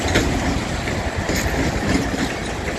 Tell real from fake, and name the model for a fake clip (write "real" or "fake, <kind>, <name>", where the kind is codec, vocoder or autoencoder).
real